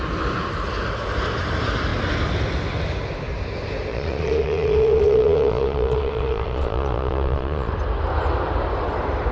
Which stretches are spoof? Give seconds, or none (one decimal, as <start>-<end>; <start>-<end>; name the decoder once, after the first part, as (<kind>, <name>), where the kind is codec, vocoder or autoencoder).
3.9-7.7 (vocoder, Vocos)